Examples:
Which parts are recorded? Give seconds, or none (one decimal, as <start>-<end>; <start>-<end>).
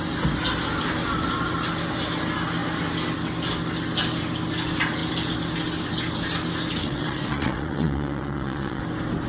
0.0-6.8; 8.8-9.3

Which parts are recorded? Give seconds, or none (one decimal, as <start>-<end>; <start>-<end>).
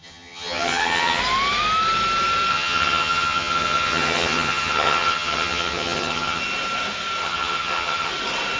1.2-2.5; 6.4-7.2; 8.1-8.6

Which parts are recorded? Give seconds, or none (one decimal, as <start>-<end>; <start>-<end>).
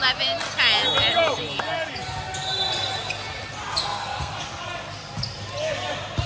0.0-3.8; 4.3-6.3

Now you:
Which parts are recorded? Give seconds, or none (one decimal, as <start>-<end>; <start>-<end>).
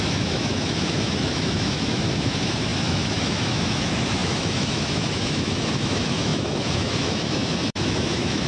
none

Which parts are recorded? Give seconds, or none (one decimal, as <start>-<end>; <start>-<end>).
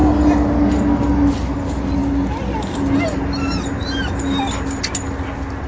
0.0-5.7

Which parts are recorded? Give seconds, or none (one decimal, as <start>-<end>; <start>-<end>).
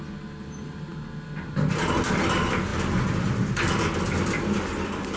0.0-5.2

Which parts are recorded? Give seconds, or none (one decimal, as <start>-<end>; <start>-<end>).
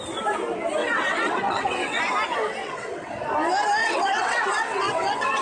0.0-0.8; 2.0-2.6; 3.1-3.8